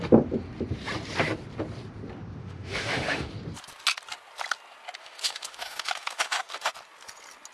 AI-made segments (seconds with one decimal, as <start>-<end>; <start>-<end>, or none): 2.4-3.3; 5.0-6.7